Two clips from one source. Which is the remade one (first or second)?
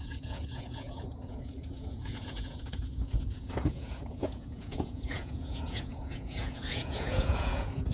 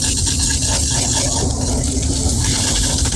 first